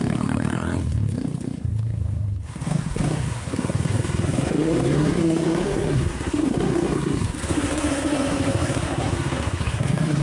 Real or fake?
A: fake